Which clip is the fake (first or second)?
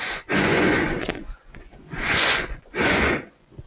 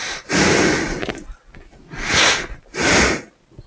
first